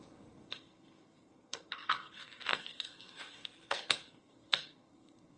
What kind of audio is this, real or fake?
fake